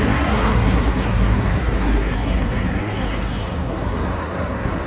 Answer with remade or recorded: remade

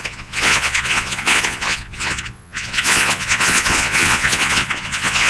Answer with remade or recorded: remade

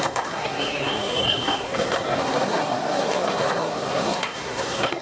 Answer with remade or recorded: remade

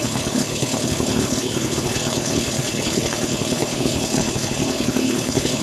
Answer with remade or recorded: remade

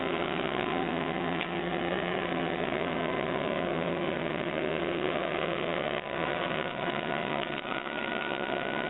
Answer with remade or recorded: remade